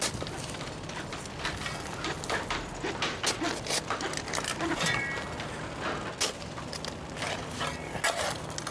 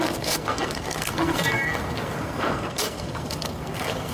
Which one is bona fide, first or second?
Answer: first